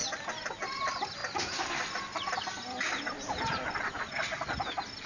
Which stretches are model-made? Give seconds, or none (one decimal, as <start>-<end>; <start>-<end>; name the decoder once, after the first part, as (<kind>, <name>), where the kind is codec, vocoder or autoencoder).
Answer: none